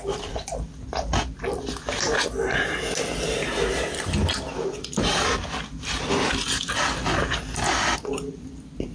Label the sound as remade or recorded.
recorded